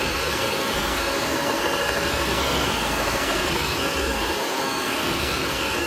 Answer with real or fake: fake